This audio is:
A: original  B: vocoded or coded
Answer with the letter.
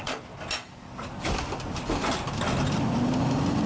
A